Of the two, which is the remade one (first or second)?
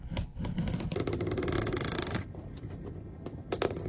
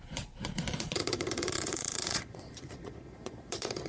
second